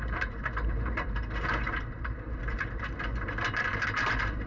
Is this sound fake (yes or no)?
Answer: yes